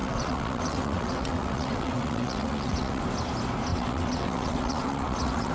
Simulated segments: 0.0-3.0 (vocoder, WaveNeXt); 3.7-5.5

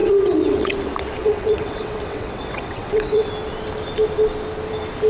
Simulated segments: 0.0-0.7 (vocoder, WaveNeXt); 1.2-3.3

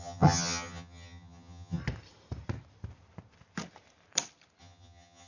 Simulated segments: 0.0-1.8 (vocoder, HiFi-GAN); 4.6-5.3